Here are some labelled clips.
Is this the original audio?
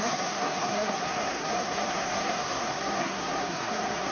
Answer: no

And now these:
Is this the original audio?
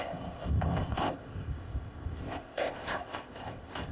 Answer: no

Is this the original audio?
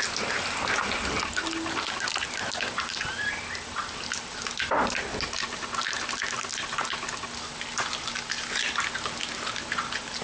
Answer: yes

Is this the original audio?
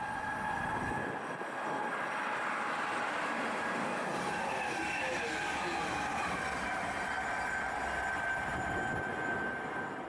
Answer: yes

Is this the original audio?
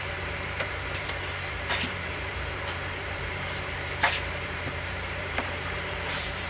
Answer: no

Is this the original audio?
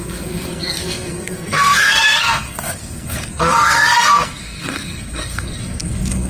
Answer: no